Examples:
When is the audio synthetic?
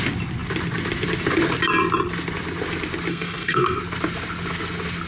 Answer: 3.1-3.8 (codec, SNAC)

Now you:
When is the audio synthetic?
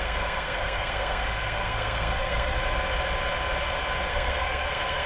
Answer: 0.0-2.6 (codec, SNAC); 4.1-5.1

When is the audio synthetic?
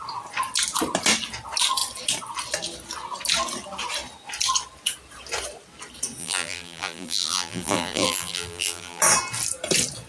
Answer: 6.2-9.0 (vocoder, BigVGAN v2)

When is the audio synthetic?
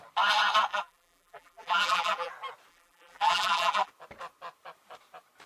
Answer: 0.7-2.3 (vocoder, BigVGAN v2); 2.7-3.9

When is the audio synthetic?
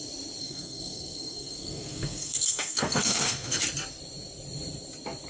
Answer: 0.4-3.6 (codec, SNAC)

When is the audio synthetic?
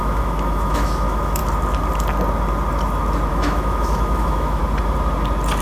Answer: 0.0-1.4 (autoencoder, DAC-VAE); 3.3-4.6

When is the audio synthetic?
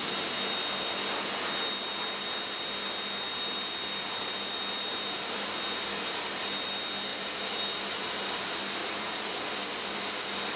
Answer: 8.8-9.3 (vocoder, Vocos)